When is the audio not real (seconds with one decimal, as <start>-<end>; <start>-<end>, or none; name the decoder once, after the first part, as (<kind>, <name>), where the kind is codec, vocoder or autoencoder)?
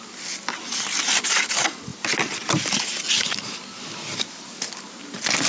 none